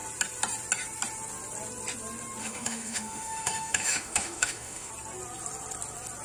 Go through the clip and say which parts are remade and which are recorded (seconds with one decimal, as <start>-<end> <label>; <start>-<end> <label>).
0.0-2.4 recorded; 2.4-4.9 remade; 4.9-6.2 recorded